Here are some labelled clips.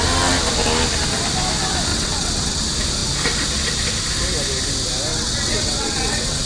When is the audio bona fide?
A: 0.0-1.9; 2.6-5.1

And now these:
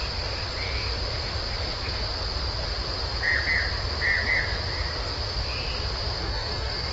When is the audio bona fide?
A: 0.0-6.2

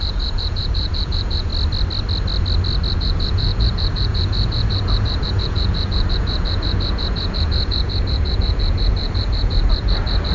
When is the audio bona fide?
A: 1.5-2.9

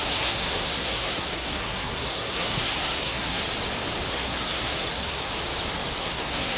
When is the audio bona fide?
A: 3.4-4.1; 5.3-6.0